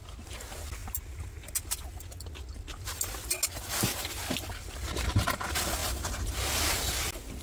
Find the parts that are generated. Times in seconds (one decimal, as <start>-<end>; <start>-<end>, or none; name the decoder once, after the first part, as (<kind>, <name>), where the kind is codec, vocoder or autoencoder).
none